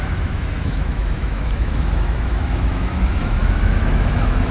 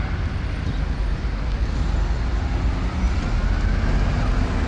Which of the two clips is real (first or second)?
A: second